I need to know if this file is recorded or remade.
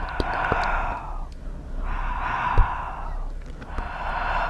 recorded